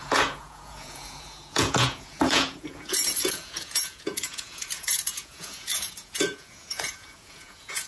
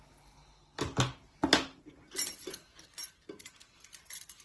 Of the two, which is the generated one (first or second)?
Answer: first